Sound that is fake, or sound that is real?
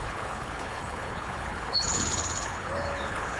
fake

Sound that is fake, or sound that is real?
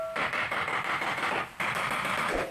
real